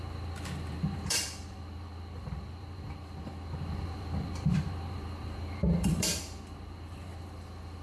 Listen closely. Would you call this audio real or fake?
fake